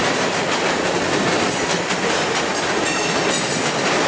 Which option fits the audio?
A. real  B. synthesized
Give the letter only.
B